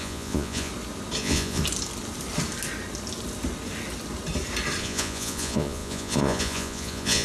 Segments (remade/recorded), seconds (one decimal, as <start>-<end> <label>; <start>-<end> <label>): 0.0-0.7 remade; 0.7-1.2 recorded; 1.2-1.6 remade; 1.6-4.8 recorded; 4.8-7.2 remade